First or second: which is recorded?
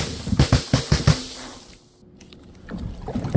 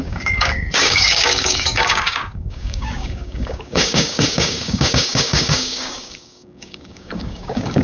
first